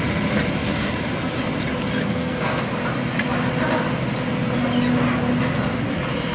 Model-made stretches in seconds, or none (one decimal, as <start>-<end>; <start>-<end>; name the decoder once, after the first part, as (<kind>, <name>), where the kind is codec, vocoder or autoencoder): 2.0-2.6 (codec, SNAC)